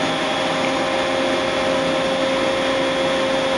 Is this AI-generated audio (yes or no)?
no